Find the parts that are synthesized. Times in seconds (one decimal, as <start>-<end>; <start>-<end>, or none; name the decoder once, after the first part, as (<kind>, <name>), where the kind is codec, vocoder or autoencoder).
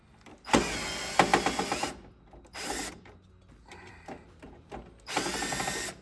none